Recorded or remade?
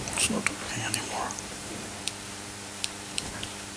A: remade